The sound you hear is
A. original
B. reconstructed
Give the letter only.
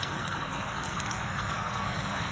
B